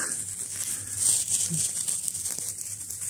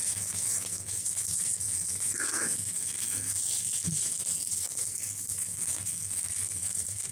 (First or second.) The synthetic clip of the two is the second